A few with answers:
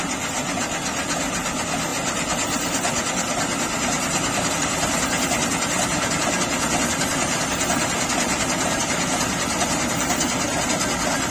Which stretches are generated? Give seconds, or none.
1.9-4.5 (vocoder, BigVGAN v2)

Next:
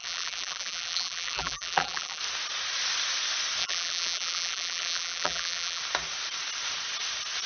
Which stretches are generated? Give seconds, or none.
0.0-2.2 (vocoder, BigVGAN v2); 3.6-5.8

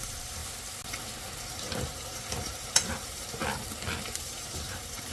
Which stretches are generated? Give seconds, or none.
0.0-0.4 (vocoder, BigVGAN v2); 1.4-3.4; 4.2-5.1

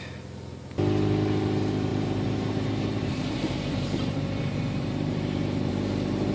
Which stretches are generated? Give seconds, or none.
1.9-5.7 (vocoder, BigVGAN v2)

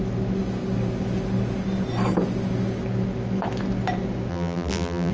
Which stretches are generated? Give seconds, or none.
4.3-5.1 (vocoder, BigVGAN v2)

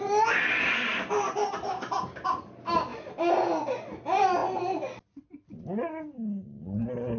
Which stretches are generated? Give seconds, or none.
2.9-3.4 (vocoder, BigVGAN v2)